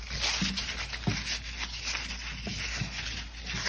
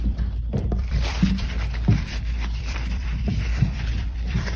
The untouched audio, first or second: first